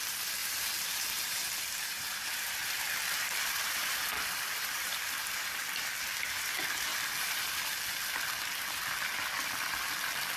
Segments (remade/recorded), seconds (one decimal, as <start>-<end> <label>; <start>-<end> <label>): 0.0-0.4 recorded; 0.4-5.6 remade; 5.6-10.4 recorded